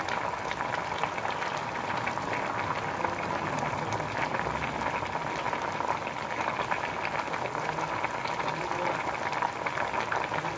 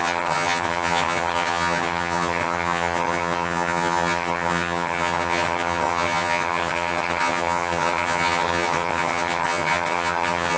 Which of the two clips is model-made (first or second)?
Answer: second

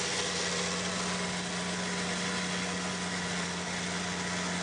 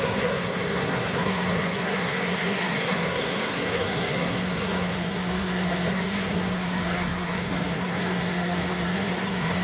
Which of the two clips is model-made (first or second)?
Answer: second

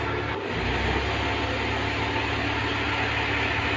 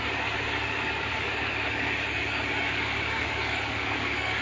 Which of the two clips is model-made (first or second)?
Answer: second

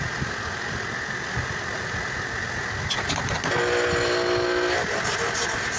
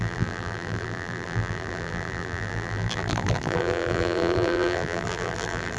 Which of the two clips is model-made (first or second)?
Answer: second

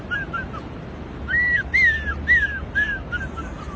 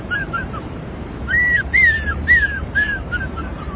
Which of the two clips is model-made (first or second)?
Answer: second